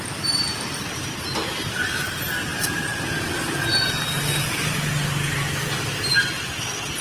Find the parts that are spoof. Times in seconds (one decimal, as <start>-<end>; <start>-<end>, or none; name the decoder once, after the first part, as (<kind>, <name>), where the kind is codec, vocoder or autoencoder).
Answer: none